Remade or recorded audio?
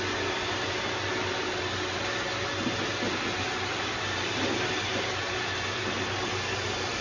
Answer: recorded